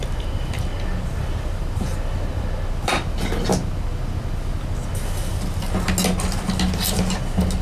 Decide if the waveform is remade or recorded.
recorded